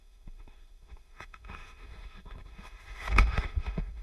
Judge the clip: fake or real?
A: fake